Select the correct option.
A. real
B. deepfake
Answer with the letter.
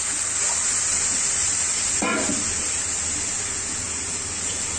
A